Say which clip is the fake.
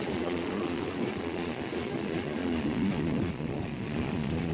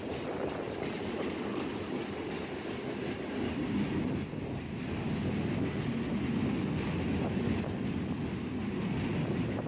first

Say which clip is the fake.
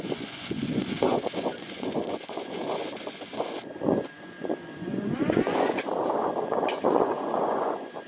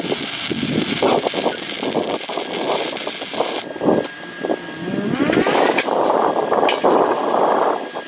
first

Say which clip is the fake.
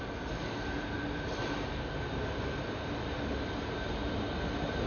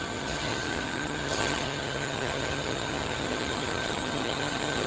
second